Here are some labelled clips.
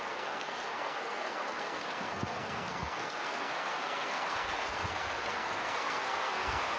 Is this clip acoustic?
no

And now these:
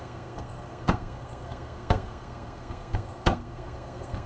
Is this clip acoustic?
no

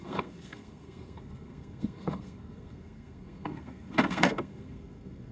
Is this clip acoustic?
no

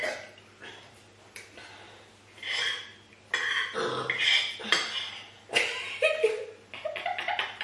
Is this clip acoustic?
yes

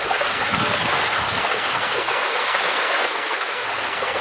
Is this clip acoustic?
no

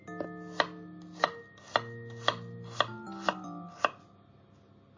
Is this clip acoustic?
yes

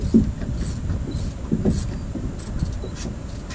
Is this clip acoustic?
yes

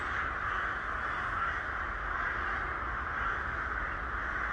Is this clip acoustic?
yes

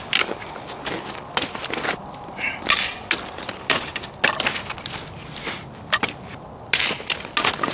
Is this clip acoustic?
yes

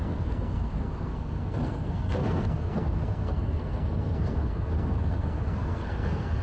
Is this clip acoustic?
no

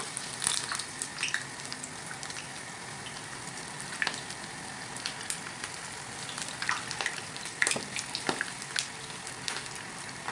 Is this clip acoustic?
yes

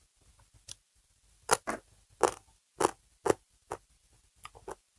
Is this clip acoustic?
yes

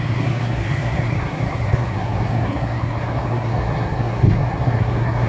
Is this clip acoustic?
no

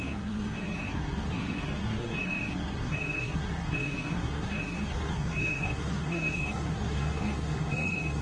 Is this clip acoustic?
no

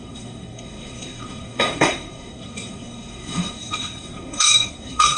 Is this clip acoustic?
no